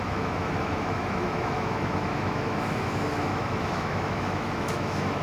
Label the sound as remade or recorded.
remade